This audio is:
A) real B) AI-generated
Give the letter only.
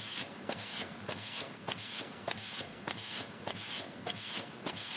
B